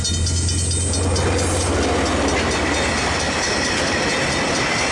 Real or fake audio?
real